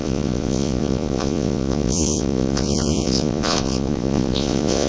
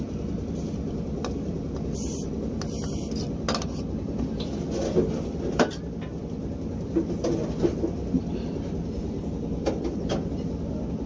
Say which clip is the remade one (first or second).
first